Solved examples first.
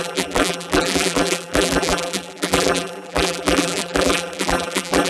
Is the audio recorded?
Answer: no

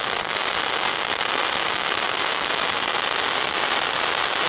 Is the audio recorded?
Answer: yes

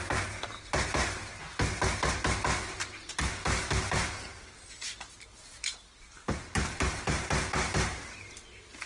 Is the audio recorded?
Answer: yes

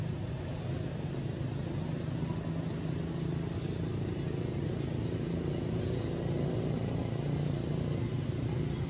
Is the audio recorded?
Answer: yes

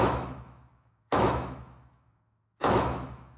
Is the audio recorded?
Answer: no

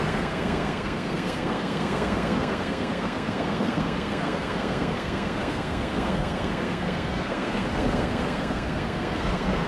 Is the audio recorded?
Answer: no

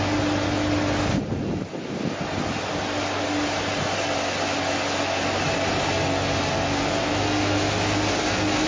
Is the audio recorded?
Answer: yes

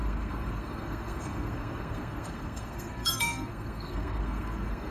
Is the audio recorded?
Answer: no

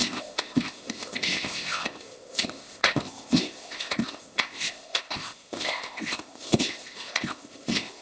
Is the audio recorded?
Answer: no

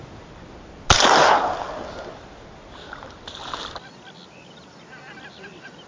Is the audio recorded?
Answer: yes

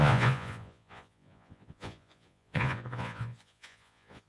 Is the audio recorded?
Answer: no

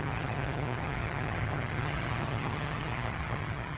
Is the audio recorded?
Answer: no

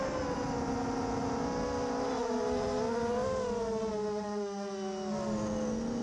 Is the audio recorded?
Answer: yes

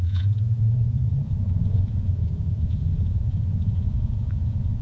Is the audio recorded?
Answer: no